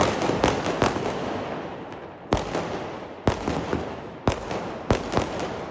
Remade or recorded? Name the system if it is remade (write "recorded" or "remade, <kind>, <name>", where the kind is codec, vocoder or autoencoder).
recorded